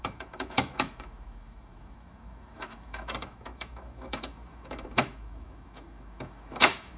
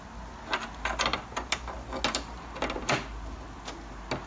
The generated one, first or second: first